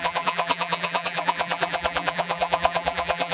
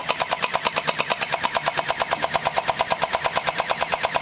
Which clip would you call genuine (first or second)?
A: second